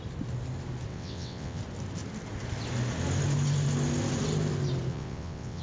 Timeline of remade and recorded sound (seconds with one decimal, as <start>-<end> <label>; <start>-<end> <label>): 0.0-0.9 recorded; 0.9-1.6 remade; 1.6-4.9 recorded; 4.9-5.6 remade